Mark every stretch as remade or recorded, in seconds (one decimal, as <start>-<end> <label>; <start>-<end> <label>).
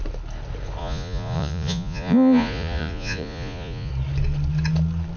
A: 0.0-0.8 recorded; 0.8-3.9 remade; 3.9-5.2 recorded